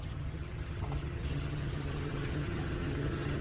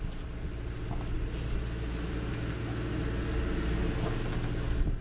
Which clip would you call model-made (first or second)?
first